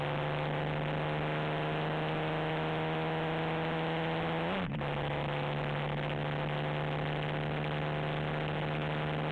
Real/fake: real